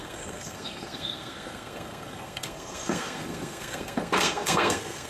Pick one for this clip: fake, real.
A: fake